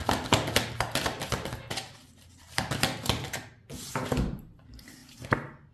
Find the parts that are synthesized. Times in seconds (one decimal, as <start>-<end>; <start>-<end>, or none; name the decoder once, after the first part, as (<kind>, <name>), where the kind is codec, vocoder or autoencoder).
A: none

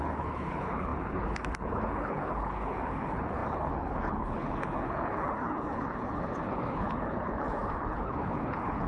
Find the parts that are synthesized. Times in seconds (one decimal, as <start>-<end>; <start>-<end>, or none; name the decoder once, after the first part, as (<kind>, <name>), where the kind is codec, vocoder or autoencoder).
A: 0.0-8.9 (codec, HILCodec)

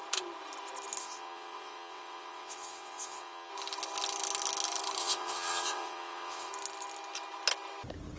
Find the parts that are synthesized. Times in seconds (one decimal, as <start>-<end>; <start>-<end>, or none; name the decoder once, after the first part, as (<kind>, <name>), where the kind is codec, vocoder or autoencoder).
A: 1.0-3.5 (vocoder, WaveNeXt); 5.0-6.5

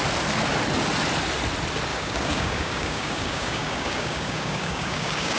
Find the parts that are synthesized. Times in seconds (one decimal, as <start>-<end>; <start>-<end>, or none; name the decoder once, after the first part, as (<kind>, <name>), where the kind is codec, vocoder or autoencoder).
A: 1.9-5.4 (codec, DAC)

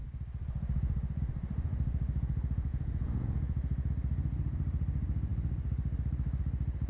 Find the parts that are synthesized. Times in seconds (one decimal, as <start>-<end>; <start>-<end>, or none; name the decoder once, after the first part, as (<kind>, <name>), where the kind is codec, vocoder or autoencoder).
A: 2.7-3.9 (vocoder, Vocos)

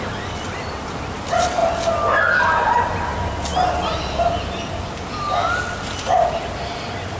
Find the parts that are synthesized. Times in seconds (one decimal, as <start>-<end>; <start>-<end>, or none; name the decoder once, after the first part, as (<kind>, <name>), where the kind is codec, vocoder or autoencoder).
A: none

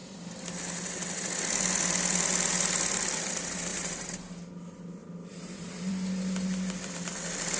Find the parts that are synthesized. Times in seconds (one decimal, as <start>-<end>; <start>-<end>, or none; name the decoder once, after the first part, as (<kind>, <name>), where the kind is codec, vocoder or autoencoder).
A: 3.7-4.5 (vocoder, BigVGAN v2); 5.0-5.9